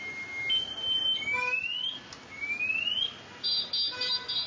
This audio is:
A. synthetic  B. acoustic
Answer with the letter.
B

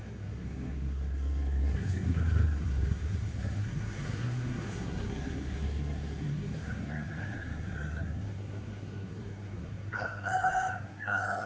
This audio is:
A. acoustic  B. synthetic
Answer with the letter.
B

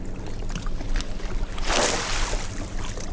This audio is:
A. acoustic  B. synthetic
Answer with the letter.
A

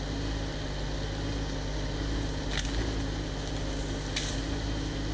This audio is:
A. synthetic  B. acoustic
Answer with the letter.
B